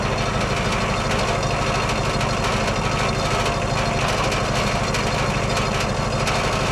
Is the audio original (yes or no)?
yes